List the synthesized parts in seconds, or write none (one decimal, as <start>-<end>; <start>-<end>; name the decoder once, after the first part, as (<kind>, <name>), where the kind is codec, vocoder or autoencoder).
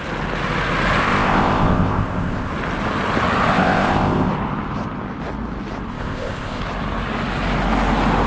1.0-2.5 (codec, ZipCodec); 3.5-4.3; 5.9-6.6